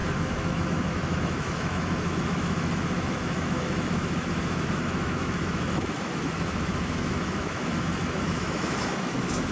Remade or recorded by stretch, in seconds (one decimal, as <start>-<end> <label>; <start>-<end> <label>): 0.0-9.5 remade